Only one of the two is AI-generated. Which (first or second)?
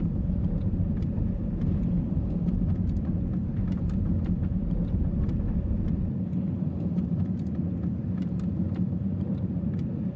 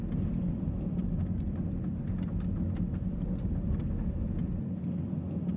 first